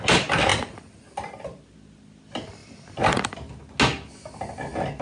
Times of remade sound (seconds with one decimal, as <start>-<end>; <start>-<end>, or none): none

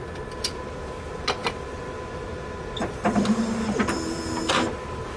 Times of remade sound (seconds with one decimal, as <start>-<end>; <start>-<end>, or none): none

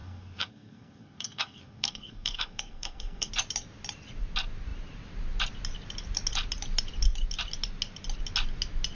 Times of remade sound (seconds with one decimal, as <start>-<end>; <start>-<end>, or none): 0.0-3.3

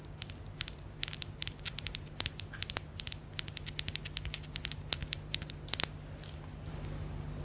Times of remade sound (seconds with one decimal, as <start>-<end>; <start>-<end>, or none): none

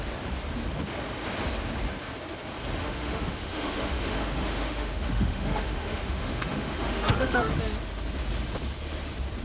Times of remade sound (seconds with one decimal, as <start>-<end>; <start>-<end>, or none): 2.8-7.5